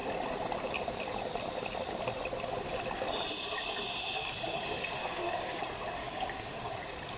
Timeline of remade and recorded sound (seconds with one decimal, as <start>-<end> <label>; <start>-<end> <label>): 0.0-5.0 recorded; 5.0-5.6 remade; 5.6-6.0 recorded; 6.0-6.6 remade; 6.6-7.2 recorded